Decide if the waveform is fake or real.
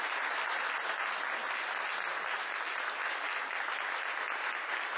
real